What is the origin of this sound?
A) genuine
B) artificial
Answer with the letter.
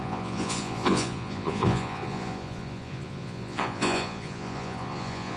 B